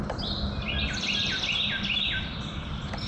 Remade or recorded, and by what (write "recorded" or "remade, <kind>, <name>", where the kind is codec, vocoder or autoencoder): recorded